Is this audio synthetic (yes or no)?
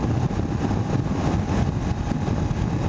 no